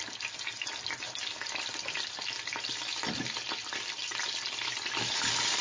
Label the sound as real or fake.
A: real